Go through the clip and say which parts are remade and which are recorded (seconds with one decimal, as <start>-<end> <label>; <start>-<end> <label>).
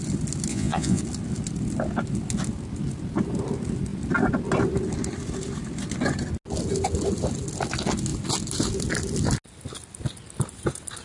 0.0-0.5 recorded; 0.5-1.0 remade; 1.0-11.0 recorded